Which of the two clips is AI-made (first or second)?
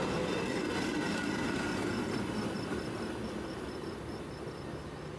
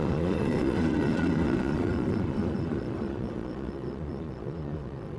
second